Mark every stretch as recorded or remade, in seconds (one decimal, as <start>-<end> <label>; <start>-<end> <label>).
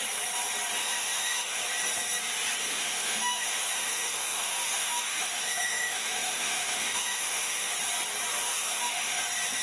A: 0.0-0.8 recorded; 0.8-1.6 remade; 1.6-2.6 recorded; 2.6-7.7 remade; 7.7-8.4 recorded; 8.4-9.2 remade; 9.2-9.6 recorded